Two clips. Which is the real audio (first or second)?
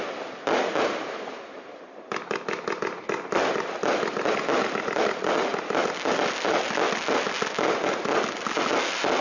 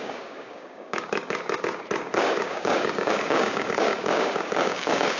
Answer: first